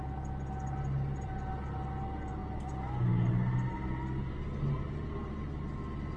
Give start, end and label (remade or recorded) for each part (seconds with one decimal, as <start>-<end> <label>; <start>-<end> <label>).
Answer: 0.0-6.2 recorded